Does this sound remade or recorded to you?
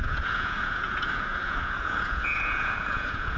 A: remade